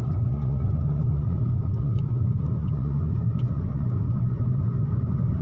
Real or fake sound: fake